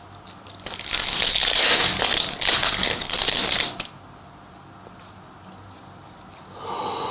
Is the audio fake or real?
real